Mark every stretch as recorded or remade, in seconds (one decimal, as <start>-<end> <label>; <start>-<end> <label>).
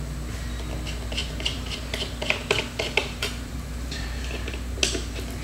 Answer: 0.0-1.2 recorded; 1.2-1.8 remade; 1.8-3.0 recorded; 3.0-4.8 remade; 4.8-5.4 recorded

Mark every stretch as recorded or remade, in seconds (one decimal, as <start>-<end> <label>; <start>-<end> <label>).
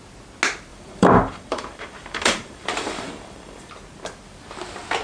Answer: 0.0-0.7 recorded; 0.7-3.7 remade; 3.7-5.0 recorded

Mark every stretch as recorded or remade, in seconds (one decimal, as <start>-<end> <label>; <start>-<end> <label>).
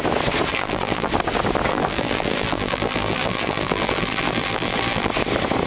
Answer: 0.0-0.5 recorded; 0.5-1.1 remade; 1.1-1.7 recorded; 1.7-5.1 remade; 5.1-5.7 recorded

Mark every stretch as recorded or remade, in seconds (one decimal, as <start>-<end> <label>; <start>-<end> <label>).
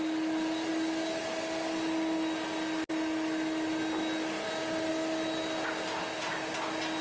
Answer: 0.0-7.0 recorded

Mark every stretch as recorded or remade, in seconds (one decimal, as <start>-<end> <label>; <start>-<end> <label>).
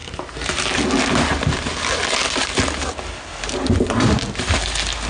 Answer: 0.0-0.7 remade; 0.7-5.1 recorded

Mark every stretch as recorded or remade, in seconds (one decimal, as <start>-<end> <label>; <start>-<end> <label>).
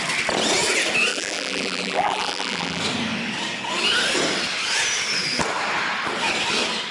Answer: 0.0-1.1 recorded; 1.1-2.8 remade; 2.8-6.9 recorded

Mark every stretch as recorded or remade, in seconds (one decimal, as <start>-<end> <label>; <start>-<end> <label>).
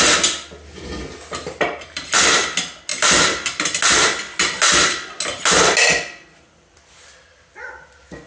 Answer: 0.0-8.3 recorded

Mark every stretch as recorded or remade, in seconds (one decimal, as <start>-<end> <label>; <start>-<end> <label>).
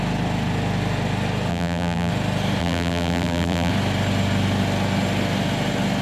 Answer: 0.0-1.5 recorded; 1.5-2.1 remade; 2.1-2.6 recorded; 2.6-3.7 remade; 3.7-6.0 recorded